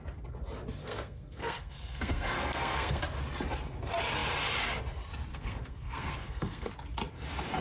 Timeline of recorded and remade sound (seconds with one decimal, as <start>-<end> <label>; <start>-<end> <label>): 0.0-0.8 recorded; 0.8-3.0 remade; 3.0-5.3 recorded; 5.3-6.7 remade; 6.7-7.6 recorded